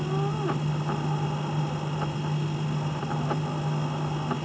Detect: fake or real real